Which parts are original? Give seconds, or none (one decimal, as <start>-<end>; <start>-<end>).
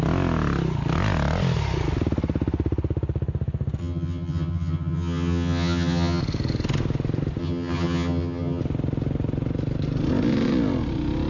0.0-3.8; 6.2-7.4; 8.6-11.3